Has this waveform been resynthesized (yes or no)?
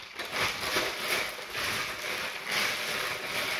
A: no